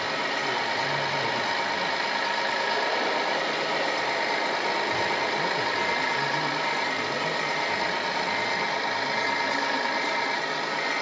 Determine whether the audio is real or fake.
real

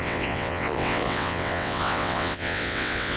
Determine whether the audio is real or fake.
fake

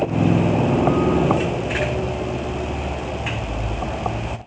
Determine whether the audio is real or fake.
real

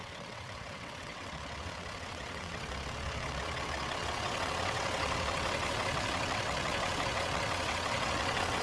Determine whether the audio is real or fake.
fake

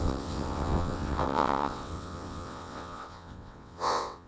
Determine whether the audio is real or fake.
fake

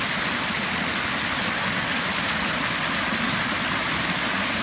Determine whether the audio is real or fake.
real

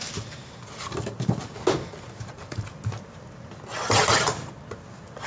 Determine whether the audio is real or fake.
real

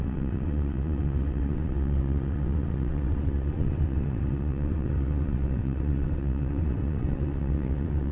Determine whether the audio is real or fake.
fake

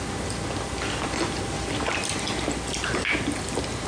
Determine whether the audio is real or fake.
real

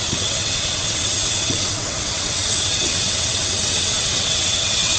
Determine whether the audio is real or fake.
fake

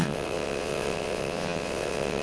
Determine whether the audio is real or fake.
fake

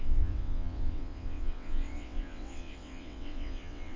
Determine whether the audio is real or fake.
fake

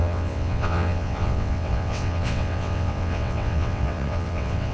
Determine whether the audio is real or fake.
fake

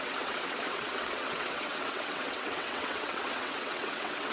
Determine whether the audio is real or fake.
fake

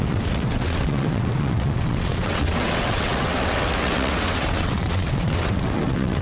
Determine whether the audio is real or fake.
fake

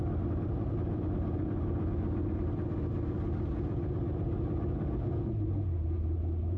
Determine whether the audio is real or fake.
real